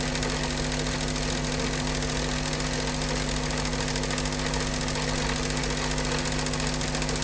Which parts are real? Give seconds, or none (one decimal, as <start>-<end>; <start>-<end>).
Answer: 0.0-7.2